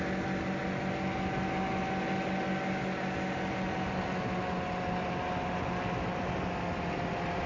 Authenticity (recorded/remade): recorded